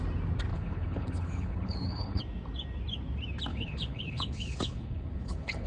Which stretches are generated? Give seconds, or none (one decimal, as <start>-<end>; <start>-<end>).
0.5-2.2; 3.5-5.7